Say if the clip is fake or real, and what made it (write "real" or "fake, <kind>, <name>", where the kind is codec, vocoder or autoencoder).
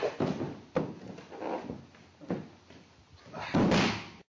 real